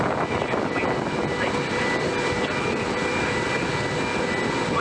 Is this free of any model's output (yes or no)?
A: yes